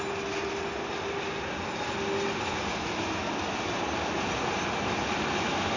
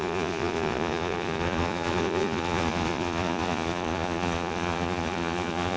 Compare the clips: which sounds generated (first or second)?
second